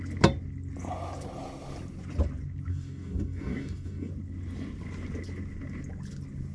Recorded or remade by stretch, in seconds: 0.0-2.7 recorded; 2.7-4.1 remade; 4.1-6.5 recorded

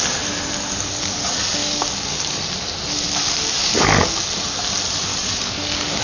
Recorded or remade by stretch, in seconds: 0.0-1.6 recorded; 1.6-2.4 remade; 2.4-5.1 recorded; 5.1-6.0 remade

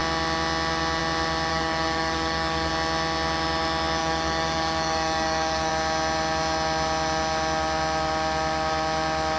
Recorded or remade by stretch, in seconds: 0.0-1.5 recorded; 1.5-2.7 remade; 2.7-4.0 recorded; 4.0-5.7 remade; 5.7-9.4 recorded

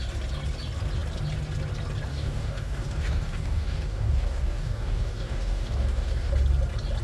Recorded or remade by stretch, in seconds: 0.0-2.1 recorded; 2.1-6.3 remade; 6.3-7.0 recorded

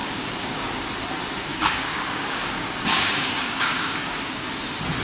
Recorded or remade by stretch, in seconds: 0.0-0.7 remade; 0.7-1.5 recorded; 1.5-4.5 remade; 4.5-5.0 recorded